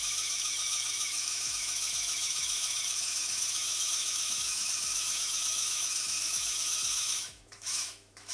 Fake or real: fake